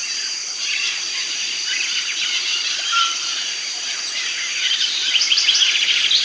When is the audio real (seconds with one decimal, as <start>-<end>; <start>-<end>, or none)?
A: 1.0-1.4; 5.1-6.2

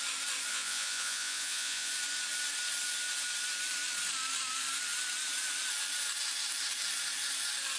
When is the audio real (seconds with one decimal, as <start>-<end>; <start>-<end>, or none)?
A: 0.0-0.5; 1.9-7.8

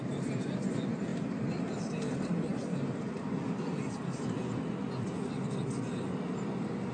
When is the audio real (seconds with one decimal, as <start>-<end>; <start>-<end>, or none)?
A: 0.0-6.9